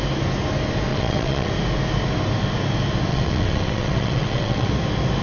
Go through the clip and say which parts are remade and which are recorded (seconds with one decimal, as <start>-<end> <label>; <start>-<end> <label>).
0.0-0.9 recorded; 0.9-1.5 remade; 1.5-3.1 recorded; 3.1-4.7 remade; 4.7-5.2 recorded